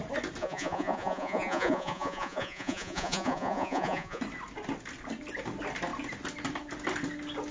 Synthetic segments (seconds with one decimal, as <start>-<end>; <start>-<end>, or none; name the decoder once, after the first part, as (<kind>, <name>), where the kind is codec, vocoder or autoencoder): 0.4-4.2 (vocoder, Vocos)